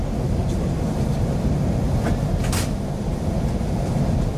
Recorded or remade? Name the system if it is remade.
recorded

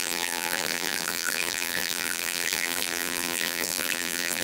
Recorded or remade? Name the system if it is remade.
remade, vocoder, BigVGAN v2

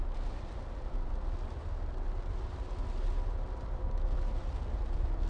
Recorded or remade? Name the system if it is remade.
remade, vocoder, BigVGAN v2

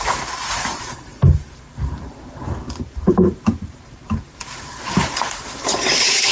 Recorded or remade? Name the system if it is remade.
remade, vocoder, BigVGAN v2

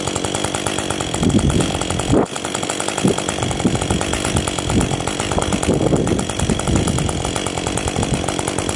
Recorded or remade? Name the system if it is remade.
remade, vocoder, BigVGAN v2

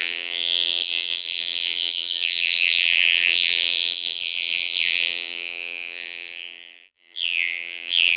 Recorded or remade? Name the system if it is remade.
remade, vocoder, BigVGAN v2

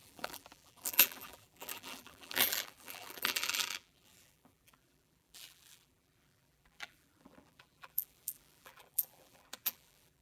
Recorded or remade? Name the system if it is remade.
remade, vocoder, BigVGAN v2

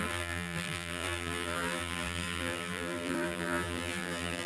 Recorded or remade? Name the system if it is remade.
remade, vocoder, BigVGAN v2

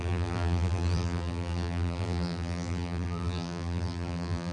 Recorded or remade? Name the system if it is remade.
remade, vocoder, BigVGAN v2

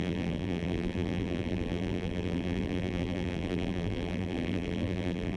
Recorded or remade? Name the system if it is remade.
remade, vocoder, BigVGAN v2